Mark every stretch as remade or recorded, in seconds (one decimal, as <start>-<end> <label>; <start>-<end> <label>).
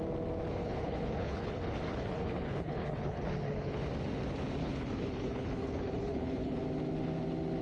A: 0.0-0.6 recorded; 0.6-3.8 remade; 3.8-4.6 recorded; 4.6-6.6 remade; 6.6-7.6 recorded